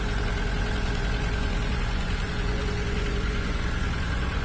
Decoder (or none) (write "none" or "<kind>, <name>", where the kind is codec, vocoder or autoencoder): vocoder, Vocos